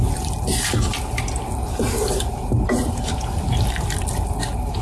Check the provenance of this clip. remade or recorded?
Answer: remade